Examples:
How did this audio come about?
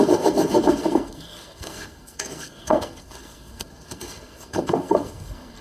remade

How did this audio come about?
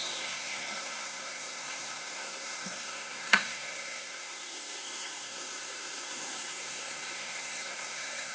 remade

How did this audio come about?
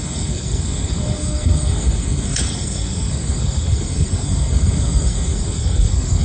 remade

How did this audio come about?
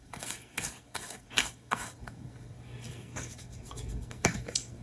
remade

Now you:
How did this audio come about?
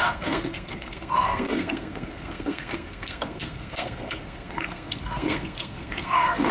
remade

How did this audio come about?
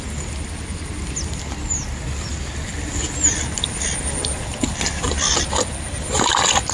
recorded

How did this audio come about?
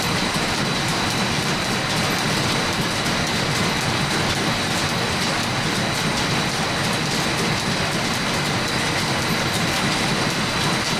recorded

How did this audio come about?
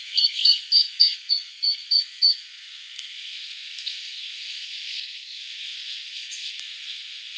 remade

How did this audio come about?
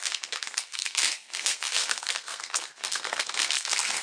remade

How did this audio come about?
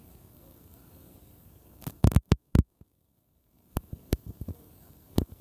remade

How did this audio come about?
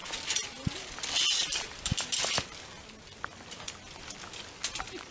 recorded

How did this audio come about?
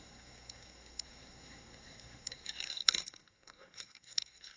remade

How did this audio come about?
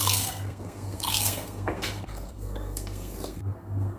remade